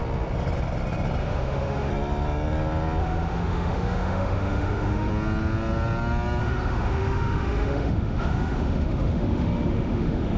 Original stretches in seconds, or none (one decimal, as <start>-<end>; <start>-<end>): 0.0-1.2; 1.9-3.0; 5.1-6.4